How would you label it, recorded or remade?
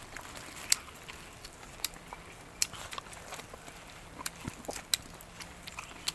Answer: recorded